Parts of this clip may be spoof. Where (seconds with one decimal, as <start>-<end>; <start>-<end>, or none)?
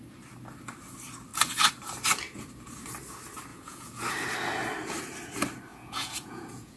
3.5-4.1; 5.7-6.8